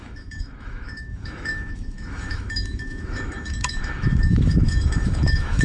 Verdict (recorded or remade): remade